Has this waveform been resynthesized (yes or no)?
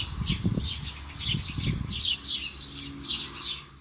no